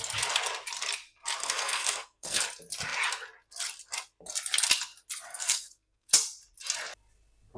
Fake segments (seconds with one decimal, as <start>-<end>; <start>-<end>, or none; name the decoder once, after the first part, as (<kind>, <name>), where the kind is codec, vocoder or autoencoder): 1.4-2.4 (codec, SNAC); 5.3-6.1

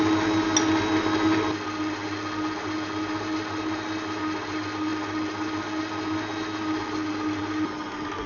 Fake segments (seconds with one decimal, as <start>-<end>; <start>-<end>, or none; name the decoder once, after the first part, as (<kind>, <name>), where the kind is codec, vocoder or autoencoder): none

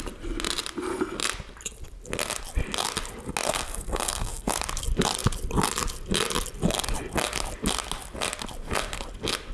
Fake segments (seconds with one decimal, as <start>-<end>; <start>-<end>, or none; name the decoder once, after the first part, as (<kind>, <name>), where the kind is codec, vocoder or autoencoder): 3.5-4.5 (codec, SNAC)

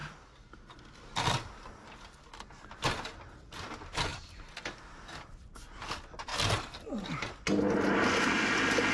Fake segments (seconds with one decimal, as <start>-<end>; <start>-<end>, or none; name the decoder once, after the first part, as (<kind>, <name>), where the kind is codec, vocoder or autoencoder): 0.0-0.8 (vocoder, BigVGAN v2)

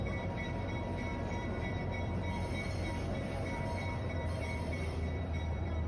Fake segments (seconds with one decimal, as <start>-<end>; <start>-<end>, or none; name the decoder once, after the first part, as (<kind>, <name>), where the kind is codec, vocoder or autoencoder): 0.0-5.9 (vocoder, BigVGAN v2)

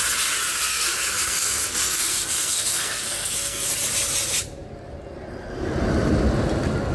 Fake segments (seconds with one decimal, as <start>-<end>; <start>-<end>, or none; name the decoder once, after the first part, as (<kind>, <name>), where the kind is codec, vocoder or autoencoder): 0.7-3.7 (codec, SNAC)

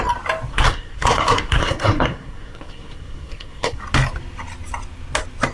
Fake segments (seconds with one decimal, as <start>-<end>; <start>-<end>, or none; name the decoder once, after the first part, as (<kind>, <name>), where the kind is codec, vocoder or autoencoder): 0.5-3.8 (codec, SNAC)

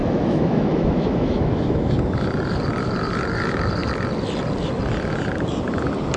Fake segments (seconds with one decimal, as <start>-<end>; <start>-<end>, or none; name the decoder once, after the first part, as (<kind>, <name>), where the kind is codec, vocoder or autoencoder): 0.0-1.9 (autoencoder, DAC-VAE)